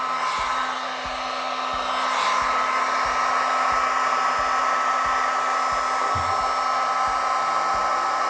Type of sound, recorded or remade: recorded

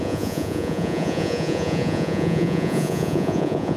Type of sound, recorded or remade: remade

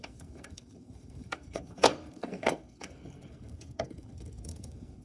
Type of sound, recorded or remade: remade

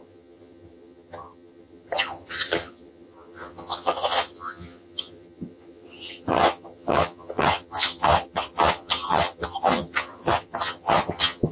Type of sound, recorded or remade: remade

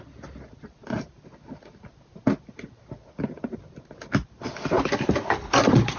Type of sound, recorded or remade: recorded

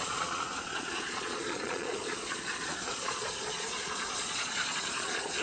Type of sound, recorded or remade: remade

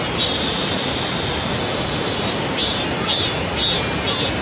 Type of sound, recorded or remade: recorded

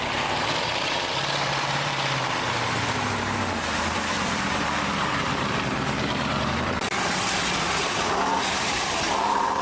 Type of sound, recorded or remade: remade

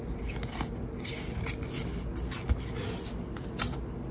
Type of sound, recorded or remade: recorded